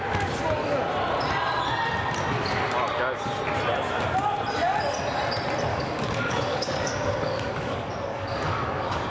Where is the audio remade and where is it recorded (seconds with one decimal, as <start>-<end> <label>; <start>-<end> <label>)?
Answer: 0.0-5.7 recorded; 5.7-9.1 remade